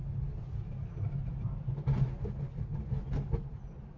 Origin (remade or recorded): recorded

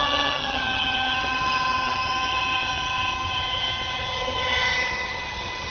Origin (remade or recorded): remade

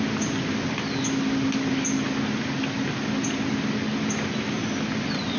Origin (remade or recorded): recorded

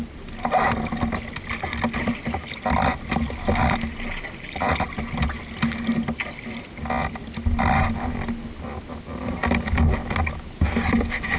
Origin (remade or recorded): recorded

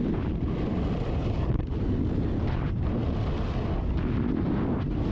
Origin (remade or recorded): recorded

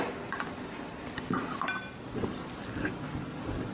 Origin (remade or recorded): recorded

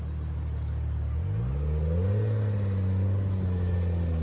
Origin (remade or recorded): recorded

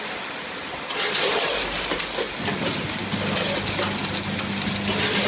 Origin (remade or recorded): recorded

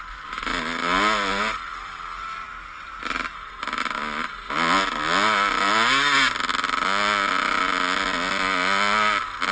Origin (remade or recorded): recorded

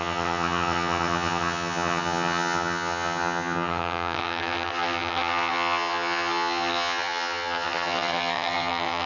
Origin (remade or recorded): remade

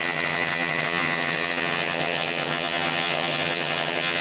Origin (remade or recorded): remade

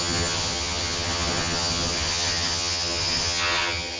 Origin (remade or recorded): remade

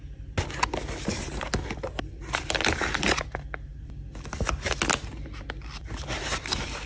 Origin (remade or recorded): recorded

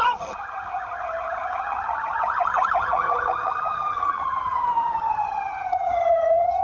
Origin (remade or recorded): remade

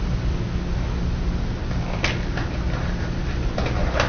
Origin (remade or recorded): recorded